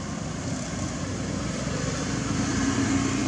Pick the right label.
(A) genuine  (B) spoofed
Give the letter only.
A